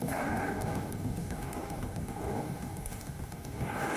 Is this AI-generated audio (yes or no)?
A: yes